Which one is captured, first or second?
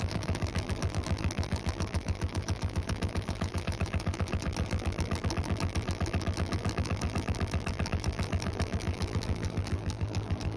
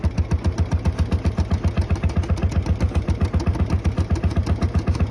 second